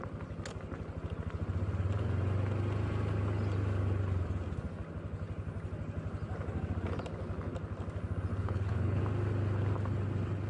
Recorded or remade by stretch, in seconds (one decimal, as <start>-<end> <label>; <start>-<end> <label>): 0.0-8.3 recorded; 8.3-9.0 remade; 9.0-10.5 recorded